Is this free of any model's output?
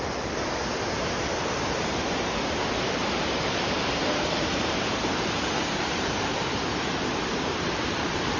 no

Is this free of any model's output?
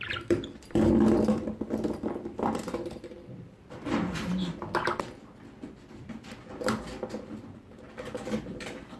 no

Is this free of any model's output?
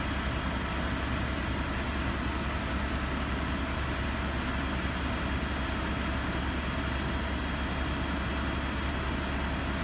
yes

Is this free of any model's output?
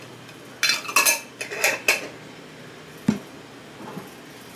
yes